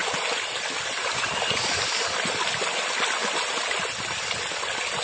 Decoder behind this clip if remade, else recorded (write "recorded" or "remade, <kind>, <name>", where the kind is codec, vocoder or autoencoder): recorded